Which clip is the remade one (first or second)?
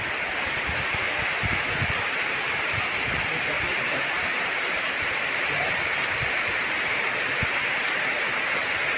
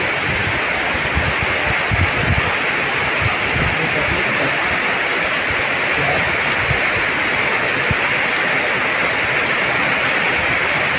first